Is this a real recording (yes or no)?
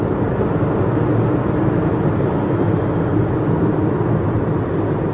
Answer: yes